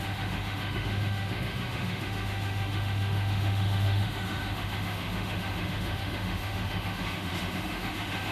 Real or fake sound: fake